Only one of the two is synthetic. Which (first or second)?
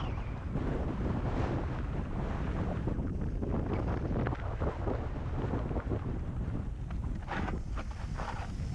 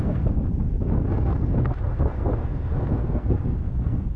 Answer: second